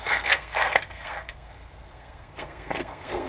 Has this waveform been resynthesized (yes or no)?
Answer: yes